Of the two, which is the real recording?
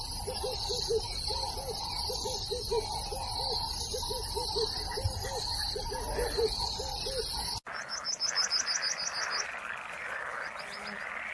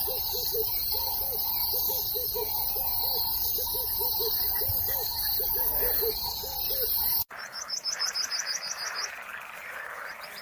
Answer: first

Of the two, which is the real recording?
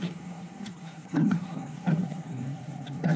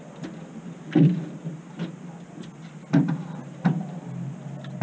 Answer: second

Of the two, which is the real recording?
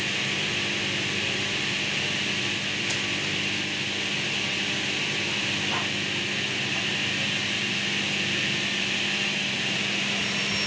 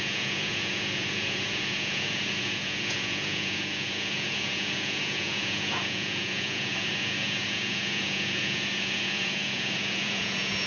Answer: first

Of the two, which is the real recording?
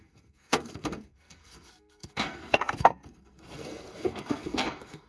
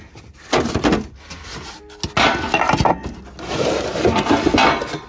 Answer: second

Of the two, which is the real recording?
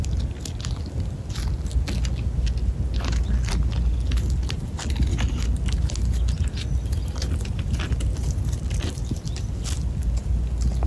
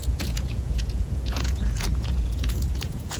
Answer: first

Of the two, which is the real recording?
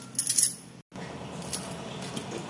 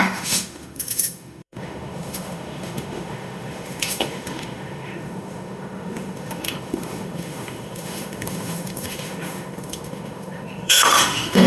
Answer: first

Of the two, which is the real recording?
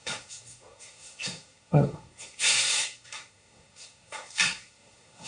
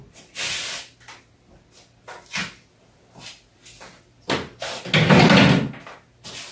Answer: second